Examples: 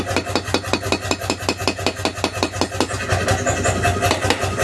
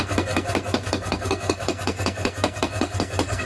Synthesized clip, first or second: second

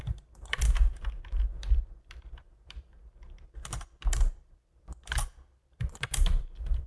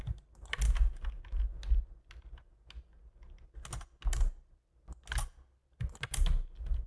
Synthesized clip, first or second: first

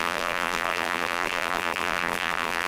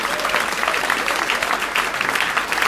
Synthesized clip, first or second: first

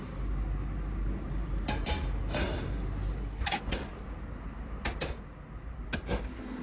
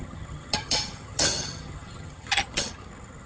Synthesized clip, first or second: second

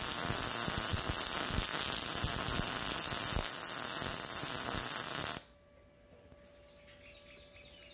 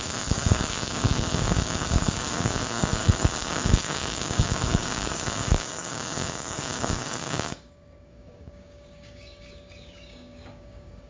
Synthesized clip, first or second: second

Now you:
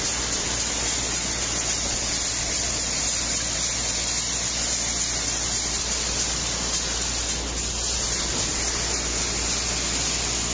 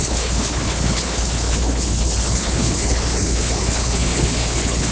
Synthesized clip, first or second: second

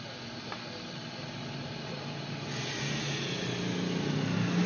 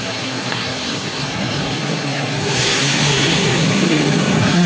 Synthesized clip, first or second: second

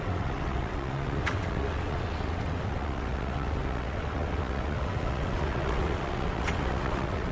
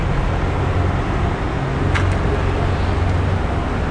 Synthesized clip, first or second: first